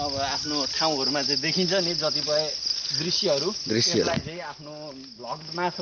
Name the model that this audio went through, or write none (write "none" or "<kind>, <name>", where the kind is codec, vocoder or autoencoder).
none